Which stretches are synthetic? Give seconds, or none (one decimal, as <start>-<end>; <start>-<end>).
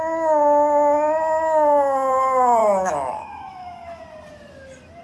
2.6-4.0